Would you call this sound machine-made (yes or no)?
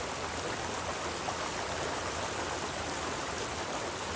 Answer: no